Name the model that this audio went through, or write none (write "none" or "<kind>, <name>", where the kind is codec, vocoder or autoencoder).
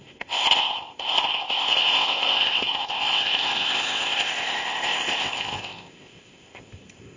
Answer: codec, ZipCodec